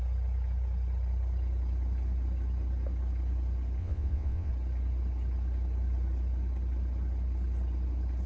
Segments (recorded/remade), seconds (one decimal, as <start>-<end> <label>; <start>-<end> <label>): 0.0-3.8 recorded; 3.8-4.5 remade; 4.5-8.3 recorded